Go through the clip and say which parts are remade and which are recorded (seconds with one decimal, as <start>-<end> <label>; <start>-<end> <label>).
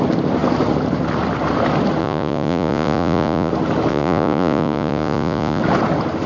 0.0-2.0 recorded; 2.0-3.5 remade; 3.5-3.9 recorded; 3.9-5.6 remade; 5.6-6.3 recorded